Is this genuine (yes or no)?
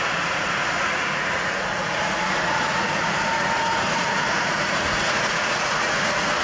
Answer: no